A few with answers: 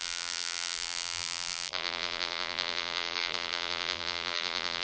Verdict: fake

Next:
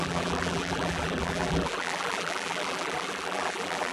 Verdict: fake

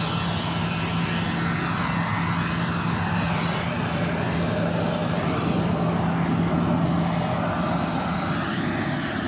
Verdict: real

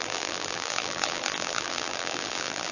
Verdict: fake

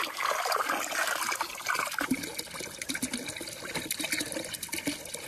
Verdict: real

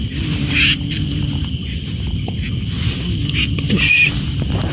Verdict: real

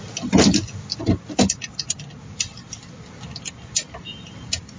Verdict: real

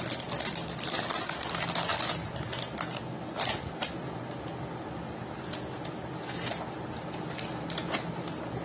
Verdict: real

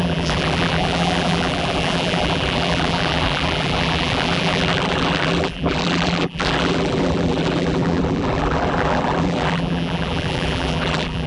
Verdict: fake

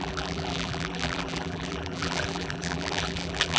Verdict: fake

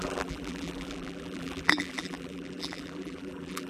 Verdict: fake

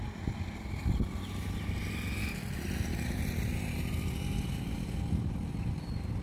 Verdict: real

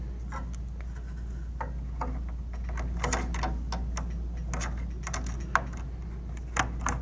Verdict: real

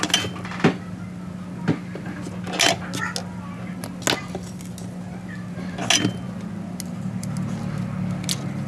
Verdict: real